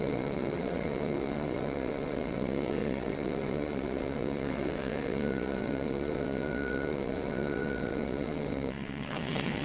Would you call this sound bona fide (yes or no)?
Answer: no